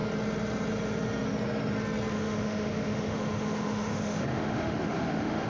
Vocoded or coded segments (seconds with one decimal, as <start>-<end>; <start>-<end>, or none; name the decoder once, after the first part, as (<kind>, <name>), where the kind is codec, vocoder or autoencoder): 2.1-5.5 (autoencoder, DAC-VAE)